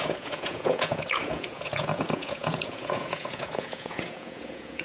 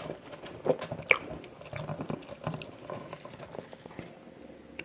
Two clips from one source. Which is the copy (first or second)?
first